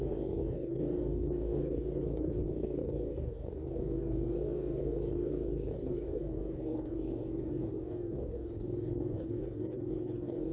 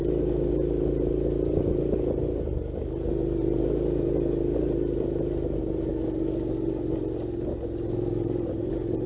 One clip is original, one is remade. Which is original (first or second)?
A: second